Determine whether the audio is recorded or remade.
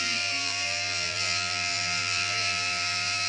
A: remade